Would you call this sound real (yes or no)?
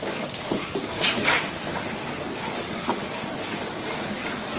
no